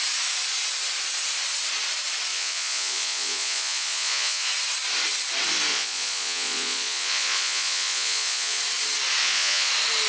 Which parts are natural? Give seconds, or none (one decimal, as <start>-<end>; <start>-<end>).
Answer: 0.0-2.3; 4.5-5.7; 8.6-9.2; 9.7-10.1